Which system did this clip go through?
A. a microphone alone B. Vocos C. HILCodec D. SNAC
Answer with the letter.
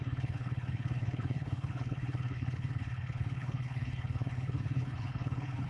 C